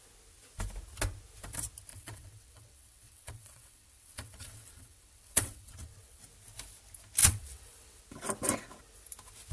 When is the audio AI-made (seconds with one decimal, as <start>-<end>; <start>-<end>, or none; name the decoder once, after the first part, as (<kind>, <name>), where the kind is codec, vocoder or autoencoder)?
1.9-6.2 (vocoder, WaveNeXt); 7.2-8.0